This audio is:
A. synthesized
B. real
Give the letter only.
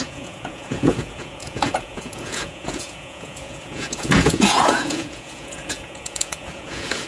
A